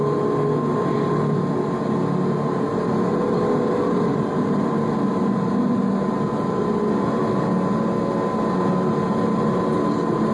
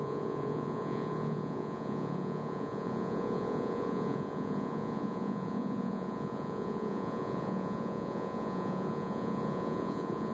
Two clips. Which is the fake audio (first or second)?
second